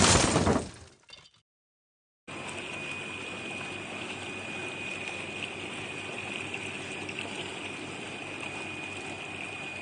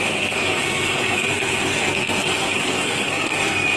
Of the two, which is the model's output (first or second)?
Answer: second